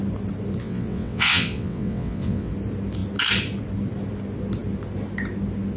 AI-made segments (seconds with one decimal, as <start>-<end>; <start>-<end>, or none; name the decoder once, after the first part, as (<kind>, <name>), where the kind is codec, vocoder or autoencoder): 0.6-2.5 (vocoder, WaveNeXt)